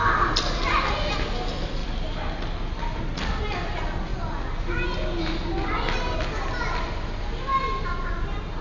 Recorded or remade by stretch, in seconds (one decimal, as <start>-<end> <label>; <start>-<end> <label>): 0.0-8.6 recorded